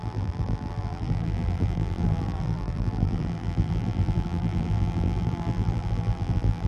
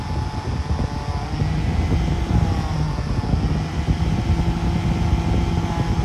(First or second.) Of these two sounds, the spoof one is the first